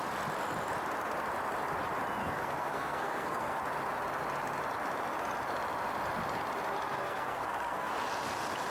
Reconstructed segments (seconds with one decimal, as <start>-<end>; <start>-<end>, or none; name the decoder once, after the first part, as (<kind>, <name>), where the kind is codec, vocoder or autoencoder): 2.2-3.6 (codec, SNAC); 7.0-7.9